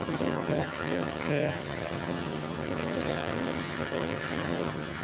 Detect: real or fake fake